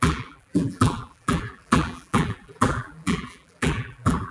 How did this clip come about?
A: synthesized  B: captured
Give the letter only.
A